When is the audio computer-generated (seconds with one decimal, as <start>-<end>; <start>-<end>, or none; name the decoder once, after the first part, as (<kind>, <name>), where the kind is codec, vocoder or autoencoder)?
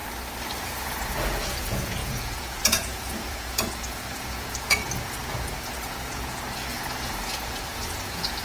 0.6-8.4 (vocoder, Vocos)